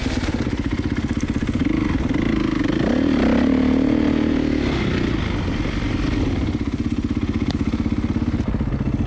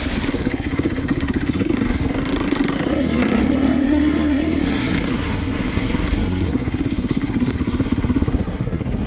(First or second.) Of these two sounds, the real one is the first